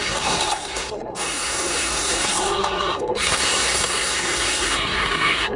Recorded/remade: remade